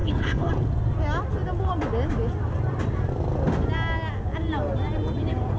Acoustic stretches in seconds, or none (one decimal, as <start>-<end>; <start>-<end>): 0.5-5.6